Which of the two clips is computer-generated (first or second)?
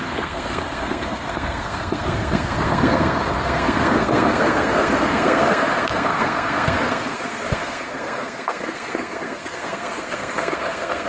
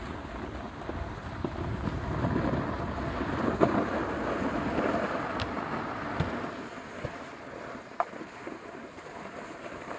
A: first